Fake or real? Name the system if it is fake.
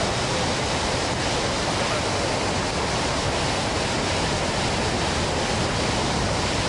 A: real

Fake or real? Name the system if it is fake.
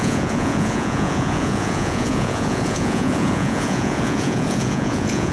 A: fake, vocoder, Vocos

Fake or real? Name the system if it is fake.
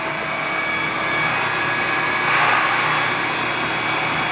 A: real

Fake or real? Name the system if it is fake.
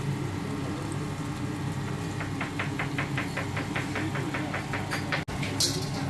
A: real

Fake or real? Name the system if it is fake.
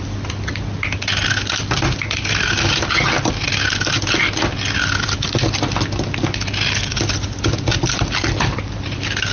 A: real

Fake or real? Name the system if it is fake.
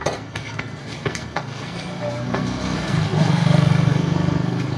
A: fake, codec, SNAC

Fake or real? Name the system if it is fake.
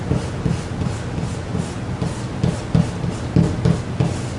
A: real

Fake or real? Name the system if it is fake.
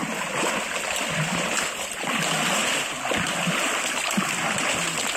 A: real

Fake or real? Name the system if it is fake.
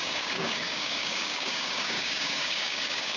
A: fake, codec, DAC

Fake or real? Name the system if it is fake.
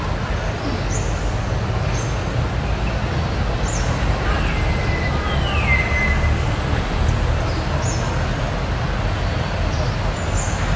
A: real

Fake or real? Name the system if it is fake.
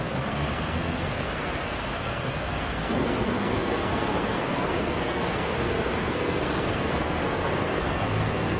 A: fake, codec, SNAC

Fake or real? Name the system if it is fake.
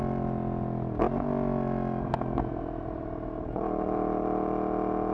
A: real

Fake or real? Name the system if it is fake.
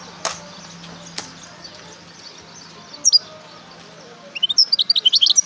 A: real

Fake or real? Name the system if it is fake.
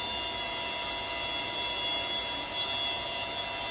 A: real